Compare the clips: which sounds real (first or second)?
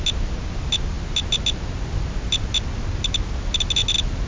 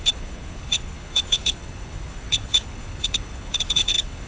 first